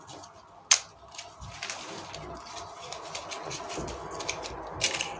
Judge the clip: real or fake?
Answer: real